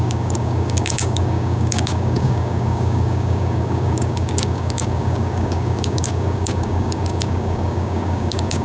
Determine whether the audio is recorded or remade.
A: remade